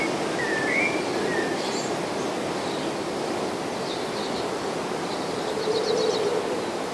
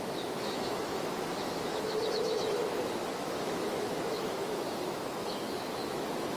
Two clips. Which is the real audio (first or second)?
first